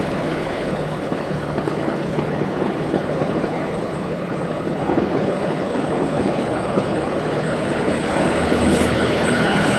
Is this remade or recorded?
remade